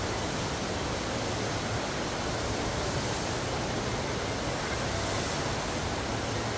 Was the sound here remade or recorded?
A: recorded